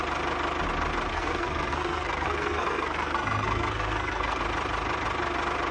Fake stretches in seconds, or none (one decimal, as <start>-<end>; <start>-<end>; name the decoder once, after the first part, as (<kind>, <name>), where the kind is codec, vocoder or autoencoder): 1.1-4.4 (codec, SNAC)